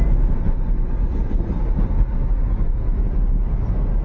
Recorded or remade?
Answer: recorded